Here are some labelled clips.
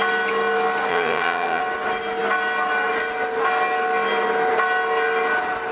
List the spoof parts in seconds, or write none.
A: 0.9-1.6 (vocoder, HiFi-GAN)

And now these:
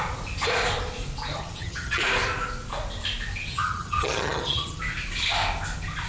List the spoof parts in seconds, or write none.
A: 1.3-2.0 (vocoder, HiFi-GAN); 3.5-4.8

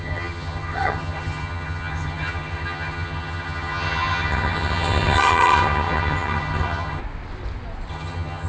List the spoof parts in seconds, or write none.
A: 0.0-7.0 (vocoder, HiFi-GAN); 7.9-8.5

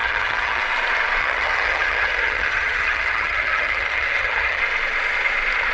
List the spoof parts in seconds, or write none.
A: 0.0-0.6 (vocoder, HiFi-GAN); 1.2-4.6

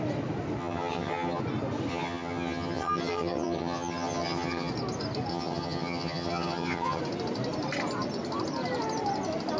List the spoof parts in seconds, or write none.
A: 0.6-1.4 (vocoder, HiFi-GAN); 1.9-4.7; 5.3-7.0

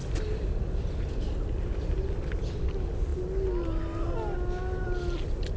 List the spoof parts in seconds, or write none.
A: none

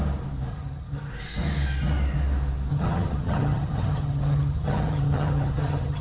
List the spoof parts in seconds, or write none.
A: 0.5-1.1 (vocoder, HiFi-GAN); 2.7-6.0